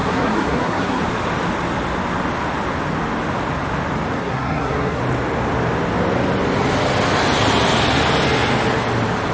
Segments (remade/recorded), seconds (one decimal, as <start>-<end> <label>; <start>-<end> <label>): 0.0-1.0 remade; 1.0-4.2 recorded; 4.2-5.0 remade; 5.0-9.3 recorded